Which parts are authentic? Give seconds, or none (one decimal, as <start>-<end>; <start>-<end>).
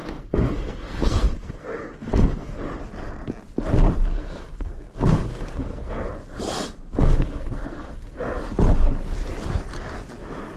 2.6-4.1; 6.1-7.0; 8.2-10.6